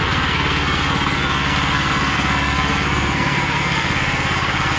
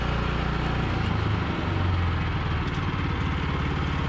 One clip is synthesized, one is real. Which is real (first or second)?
second